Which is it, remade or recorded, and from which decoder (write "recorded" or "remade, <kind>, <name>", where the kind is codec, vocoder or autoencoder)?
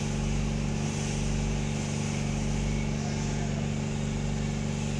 recorded